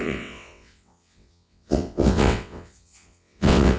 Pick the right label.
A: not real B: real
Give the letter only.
A